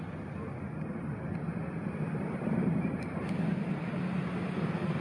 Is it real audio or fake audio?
real